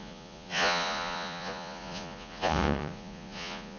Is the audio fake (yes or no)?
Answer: yes